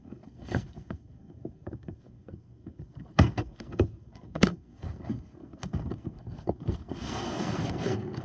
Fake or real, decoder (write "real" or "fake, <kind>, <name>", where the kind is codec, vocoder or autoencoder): fake, codec, SNAC